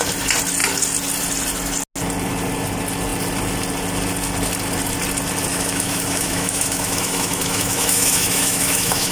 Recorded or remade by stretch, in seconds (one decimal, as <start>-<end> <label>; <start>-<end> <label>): 0.0-5.5 recorded; 5.5-9.1 remade